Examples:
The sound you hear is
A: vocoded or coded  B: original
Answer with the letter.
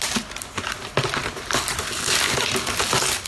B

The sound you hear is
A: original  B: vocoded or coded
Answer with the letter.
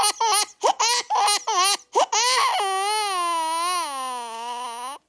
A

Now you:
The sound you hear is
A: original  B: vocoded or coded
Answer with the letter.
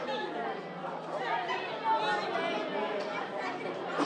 A